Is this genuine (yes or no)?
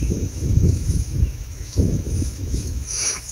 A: no